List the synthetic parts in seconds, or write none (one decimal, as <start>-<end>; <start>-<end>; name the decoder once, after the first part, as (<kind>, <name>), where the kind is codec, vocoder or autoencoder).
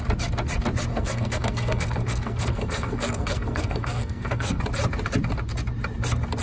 0.9-4.6 (codec, SNAC)